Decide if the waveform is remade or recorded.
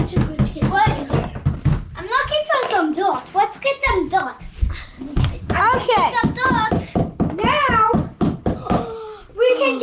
recorded